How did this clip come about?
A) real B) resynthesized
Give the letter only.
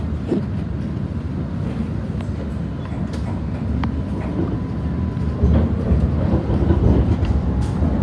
A